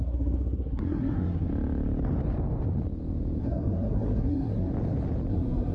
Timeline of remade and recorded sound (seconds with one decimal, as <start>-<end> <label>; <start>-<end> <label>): 0.0-1.5 remade; 1.5-3.4 recorded; 3.4-4.7 remade; 4.7-5.3 recorded; 5.3-5.7 remade